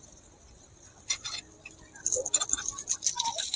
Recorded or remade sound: recorded